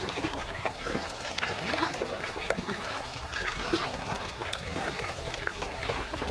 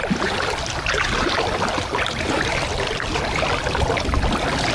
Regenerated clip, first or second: first